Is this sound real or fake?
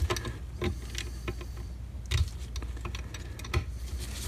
real